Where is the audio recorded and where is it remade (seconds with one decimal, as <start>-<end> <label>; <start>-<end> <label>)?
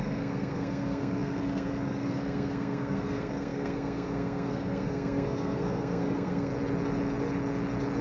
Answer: 0.0-6.5 remade; 6.5-8.0 recorded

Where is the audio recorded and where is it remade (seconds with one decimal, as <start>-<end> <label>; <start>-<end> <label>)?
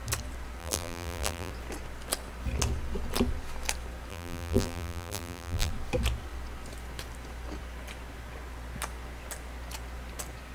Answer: 0.0-0.6 recorded; 0.6-1.5 remade; 1.5-4.1 recorded; 4.1-5.7 remade; 5.7-10.5 recorded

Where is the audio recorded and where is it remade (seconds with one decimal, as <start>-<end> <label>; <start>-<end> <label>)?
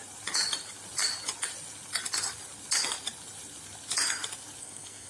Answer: 0.0-4.6 recorded; 4.6-5.1 remade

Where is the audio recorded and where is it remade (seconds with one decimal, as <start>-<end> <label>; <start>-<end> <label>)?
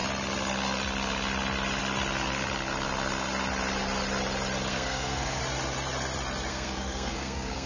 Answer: 0.0-4.7 recorded; 4.7-5.4 remade; 5.4-6.5 recorded; 6.5-7.7 remade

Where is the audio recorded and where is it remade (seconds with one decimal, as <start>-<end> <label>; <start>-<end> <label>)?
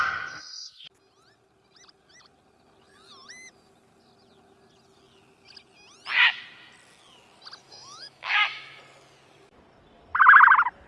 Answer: 0.0-7.6 recorded; 7.6-8.8 remade; 8.8-10.9 recorded